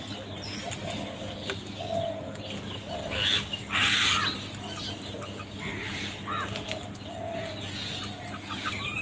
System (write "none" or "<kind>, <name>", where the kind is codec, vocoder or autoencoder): none